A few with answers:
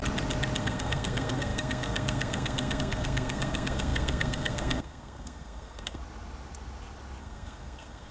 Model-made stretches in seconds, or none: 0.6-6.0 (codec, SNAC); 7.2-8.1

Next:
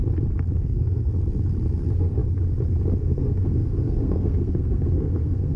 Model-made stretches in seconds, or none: 0.6-1.1 (codec, SNAC); 1.7-2.2; 3.0-5.6

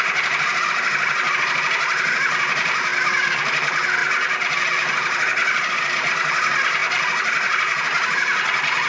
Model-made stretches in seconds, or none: 2.9-3.5 (vocoder, BigVGAN v2); 4.0-6.1

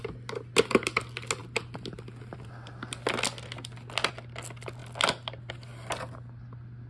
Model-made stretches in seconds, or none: none

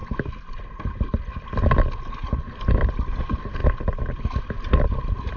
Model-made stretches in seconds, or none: none